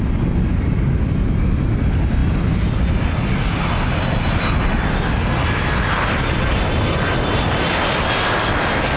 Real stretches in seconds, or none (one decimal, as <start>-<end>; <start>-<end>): 0.0-9.0